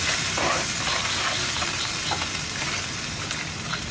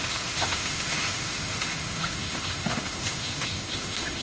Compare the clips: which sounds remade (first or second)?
second